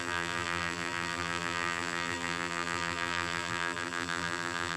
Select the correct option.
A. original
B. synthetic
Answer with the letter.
B